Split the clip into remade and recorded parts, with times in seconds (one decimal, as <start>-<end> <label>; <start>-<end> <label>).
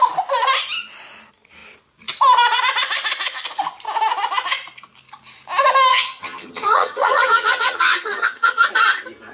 0.0-5.9 recorded; 5.9-8.7 remade; 8.7-9.3 recorded